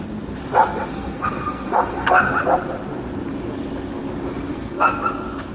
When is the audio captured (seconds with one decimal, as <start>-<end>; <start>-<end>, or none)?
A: 0.0-0.9; 2.2-4.5; 5.0-5.5